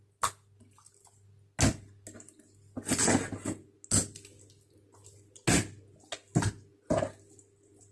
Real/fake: real